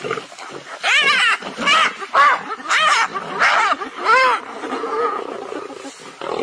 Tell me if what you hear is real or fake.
real